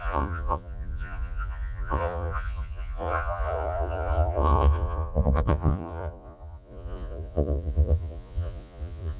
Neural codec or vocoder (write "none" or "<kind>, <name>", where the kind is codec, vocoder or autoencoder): vocoder, Vocos